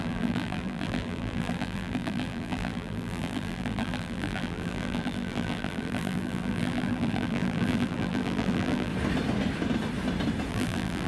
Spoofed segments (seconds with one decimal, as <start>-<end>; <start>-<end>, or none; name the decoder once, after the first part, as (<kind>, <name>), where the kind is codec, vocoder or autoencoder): 0.0-8.9 (vocoder, BigVGAN v2); 10.5-11.1